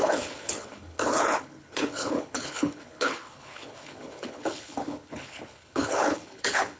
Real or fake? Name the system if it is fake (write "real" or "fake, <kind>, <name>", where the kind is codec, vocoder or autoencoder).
fake, codec, HILCodec